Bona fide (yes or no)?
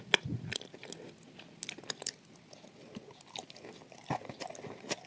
yes